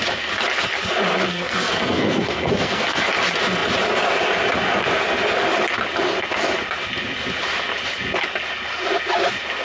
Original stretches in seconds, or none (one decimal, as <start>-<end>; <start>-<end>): 0.0-1.3; 3.0-9.6